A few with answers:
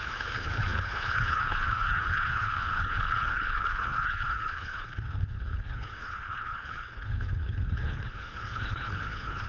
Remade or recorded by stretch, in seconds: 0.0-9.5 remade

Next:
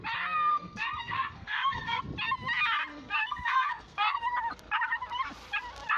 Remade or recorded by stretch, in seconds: 0.0-0.5 recorded; 0.5-2.0 remade; 2.0-2.9 recorded; 2.9-4.2 remade; 4.2-6.0 recorded

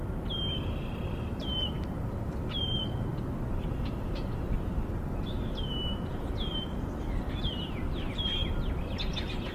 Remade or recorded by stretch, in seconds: 0.0-2.6 recorded; 2.6-3.1 remade; 3.1-7.0 recorded; 7.0-8.4 remade; 8.4-9.0 recorded; 9.0-9.5 remade

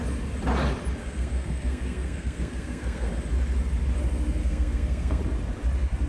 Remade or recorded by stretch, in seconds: 0.0-1.0 recorded; 1.0-3.1 remade; 3.1-4.4 recorded; 4.4-5.2 remade; 5.2-6.1 recorded

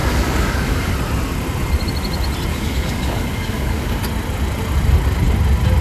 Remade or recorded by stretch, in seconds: 0.0-0.9 remade; 0.9-2.5 recorded; 2.5-4.0 remade; 4.0-5.8 recorded

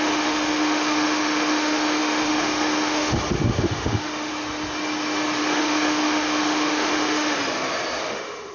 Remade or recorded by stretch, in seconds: 0.0-4.3 remade; 4.3-5.4 recorded; 5.4-7.4 remade; 7.4-8.0 recorded; 8.0-8.5 remade

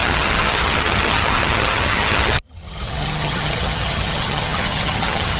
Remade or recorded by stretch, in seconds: 0.0-5.4 remade